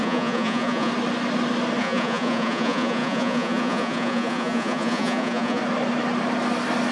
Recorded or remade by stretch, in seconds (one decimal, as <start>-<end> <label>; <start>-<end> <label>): 0.0-0.9 remade; 0.9-1.8 recorded; 1.8-5.6 remade; 5.6-6.9 recorded